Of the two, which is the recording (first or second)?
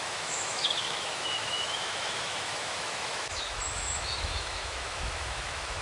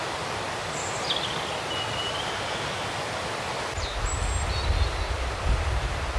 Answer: second